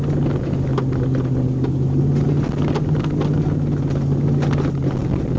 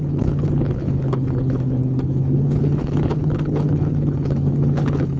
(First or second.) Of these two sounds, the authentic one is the first